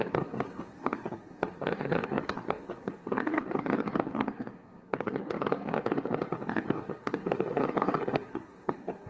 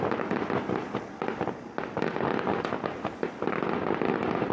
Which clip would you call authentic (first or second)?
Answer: second